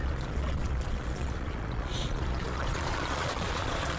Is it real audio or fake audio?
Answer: fake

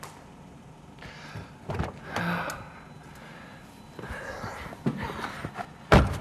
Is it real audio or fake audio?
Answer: real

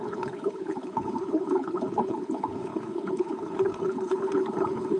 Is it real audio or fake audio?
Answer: fake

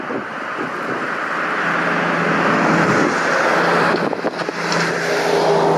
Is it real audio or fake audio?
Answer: real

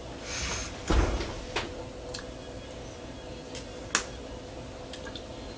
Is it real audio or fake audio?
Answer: real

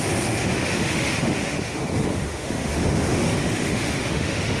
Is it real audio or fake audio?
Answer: fake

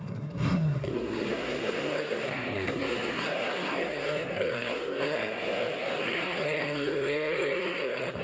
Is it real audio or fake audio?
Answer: fake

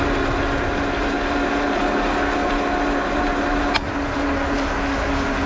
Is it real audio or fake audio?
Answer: real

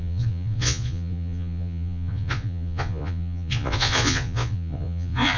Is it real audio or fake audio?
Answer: fake